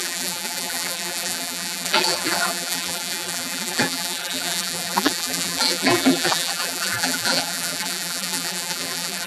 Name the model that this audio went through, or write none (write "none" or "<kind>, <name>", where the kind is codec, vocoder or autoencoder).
vocoder, BigVGAN v2